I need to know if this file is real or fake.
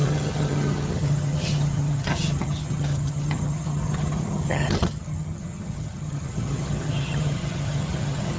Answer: fake